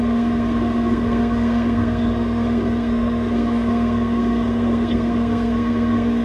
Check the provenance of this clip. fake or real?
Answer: fake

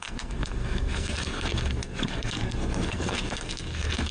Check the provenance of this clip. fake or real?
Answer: fake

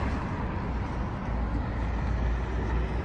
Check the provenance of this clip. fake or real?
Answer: real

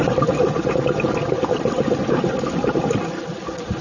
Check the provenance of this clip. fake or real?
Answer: real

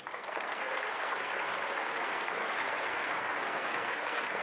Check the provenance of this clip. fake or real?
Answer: fake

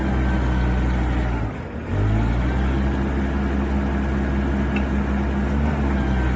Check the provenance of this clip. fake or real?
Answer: real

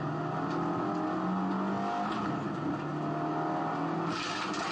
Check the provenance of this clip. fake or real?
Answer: real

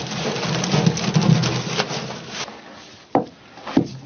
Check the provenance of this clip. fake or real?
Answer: real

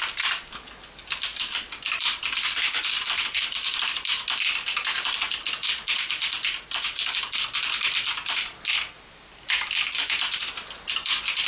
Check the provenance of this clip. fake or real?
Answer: real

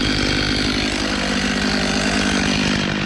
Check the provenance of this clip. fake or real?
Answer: real